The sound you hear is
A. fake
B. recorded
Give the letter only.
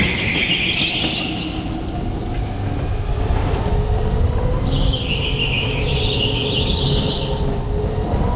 B